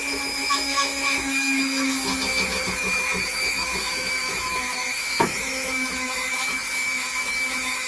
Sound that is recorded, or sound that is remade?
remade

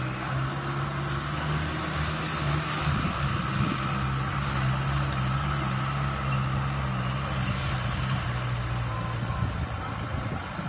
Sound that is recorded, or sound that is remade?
recorded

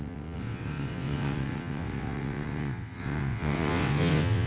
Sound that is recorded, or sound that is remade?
remade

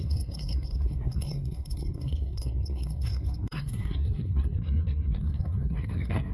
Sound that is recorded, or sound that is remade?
remade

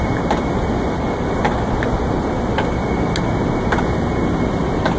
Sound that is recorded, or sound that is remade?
recorded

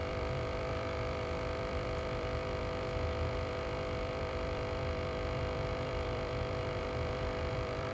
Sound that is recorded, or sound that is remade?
remade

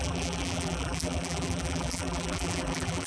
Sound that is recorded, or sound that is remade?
remade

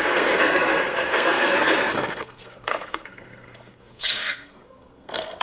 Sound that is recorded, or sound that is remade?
remade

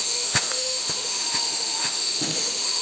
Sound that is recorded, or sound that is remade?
remade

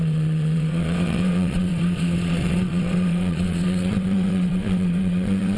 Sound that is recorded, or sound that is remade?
remade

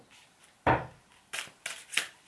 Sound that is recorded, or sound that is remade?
recorded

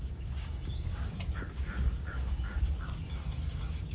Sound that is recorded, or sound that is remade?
remade